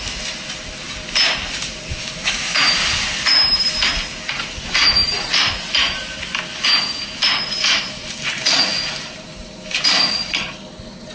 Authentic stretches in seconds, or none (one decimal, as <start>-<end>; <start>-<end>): 0.0-1.9; 2.6-11.1